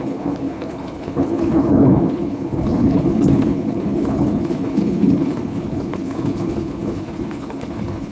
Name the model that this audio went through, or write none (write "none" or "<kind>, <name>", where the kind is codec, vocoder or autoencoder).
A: codec, HILCodec